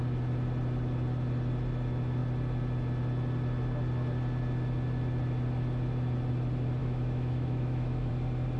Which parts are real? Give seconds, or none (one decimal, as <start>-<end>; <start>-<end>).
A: 0.0-6.8; 8.1-8.6